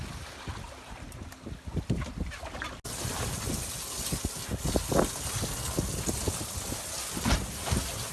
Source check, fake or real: real